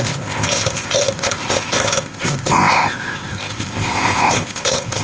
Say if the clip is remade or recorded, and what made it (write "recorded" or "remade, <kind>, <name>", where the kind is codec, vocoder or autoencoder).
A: remade, codec, ZipCodec